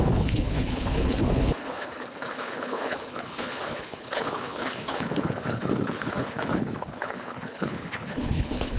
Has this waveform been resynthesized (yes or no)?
yes